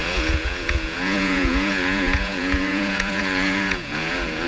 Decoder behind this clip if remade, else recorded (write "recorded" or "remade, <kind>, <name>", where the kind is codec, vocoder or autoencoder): remade, vocoder, Vocos